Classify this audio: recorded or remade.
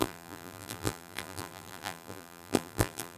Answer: remade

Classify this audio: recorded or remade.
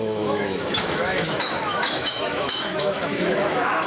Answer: remade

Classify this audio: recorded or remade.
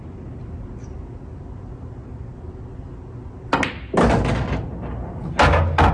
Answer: recorded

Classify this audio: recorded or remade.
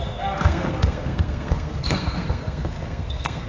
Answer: remade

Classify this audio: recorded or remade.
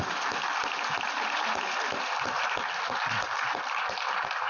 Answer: recorded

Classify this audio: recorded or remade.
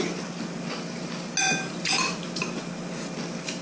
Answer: recorded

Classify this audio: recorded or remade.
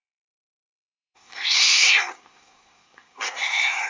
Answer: remade